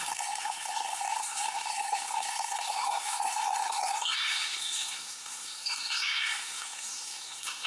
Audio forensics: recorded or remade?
remade